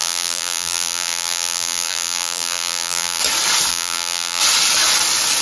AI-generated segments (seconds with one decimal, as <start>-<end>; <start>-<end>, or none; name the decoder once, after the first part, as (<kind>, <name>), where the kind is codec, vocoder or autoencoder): 0.0-3.2 (vocoder, BigVGAN v2); 3.7-4.4